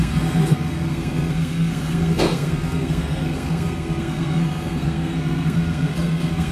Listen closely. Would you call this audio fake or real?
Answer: fake